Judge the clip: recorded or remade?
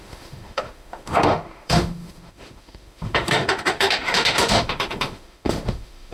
remade